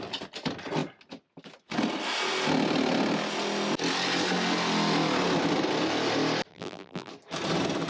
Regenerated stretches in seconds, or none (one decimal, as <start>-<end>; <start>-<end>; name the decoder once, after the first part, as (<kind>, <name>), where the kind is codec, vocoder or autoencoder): 6.5-7.1 (vocoder, BigVGAN v2)

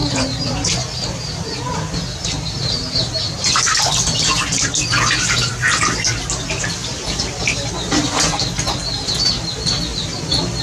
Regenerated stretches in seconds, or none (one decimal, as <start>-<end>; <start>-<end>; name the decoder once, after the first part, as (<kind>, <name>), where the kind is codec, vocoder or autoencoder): 6.8-7.7 (vocoder, BigVGAN v2); 9.9-10.6